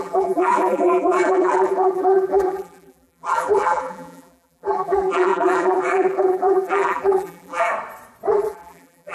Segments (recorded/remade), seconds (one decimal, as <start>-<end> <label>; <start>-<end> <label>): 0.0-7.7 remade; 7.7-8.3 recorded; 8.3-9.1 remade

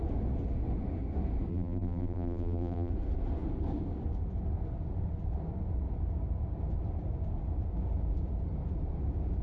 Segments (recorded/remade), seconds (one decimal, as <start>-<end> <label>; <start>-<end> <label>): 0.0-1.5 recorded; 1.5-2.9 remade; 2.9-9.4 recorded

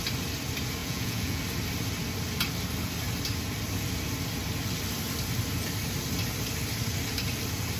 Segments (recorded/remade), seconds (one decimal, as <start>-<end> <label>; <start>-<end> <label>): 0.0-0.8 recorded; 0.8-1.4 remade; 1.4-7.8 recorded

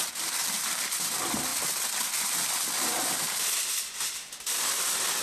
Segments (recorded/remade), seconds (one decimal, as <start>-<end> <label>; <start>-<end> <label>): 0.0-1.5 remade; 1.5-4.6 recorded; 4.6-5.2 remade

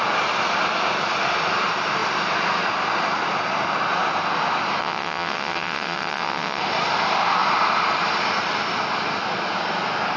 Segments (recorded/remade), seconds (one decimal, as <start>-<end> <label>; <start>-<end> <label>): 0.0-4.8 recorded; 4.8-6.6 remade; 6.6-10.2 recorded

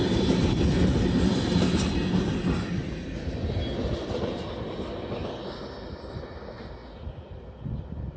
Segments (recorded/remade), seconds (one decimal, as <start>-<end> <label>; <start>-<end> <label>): 0.0-8.2 recorded